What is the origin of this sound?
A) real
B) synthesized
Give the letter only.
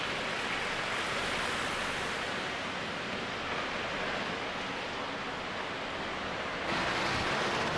A